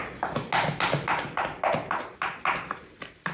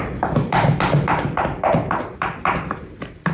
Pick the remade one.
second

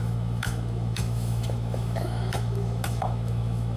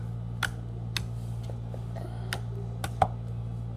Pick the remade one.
first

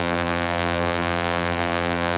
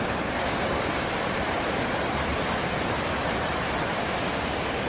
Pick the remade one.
first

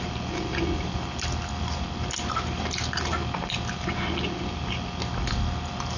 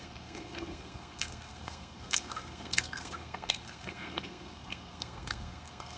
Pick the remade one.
second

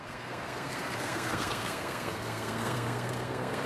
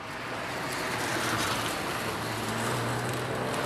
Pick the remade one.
first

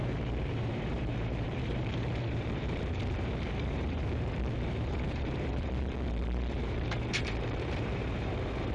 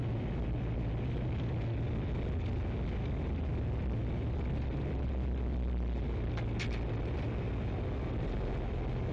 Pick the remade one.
first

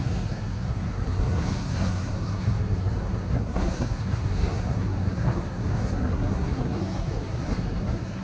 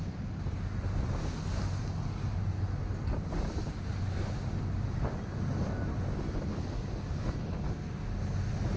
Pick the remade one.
first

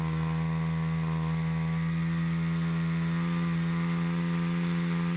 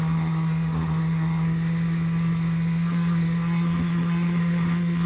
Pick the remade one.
second